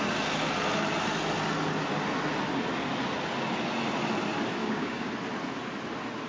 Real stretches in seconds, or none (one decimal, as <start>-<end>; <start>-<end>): 0.0-4.6; 5.1-6.3